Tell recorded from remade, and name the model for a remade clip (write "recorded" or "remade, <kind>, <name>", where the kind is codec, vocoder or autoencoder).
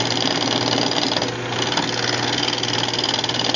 recorded